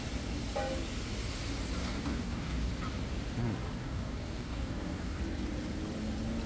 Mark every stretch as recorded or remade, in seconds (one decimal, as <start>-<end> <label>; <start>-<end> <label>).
0.0-1.8 recorded; 1.8-2.7 remade; 2.7-3.8 recorded; 3.8-5.2 remade; 5.2-6.5 recorded